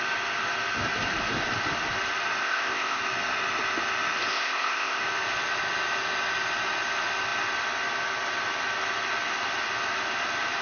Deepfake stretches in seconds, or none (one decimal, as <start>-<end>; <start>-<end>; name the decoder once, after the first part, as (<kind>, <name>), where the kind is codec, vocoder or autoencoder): 2.4-3.0 (codec, ZipCodec); 4.3-5.0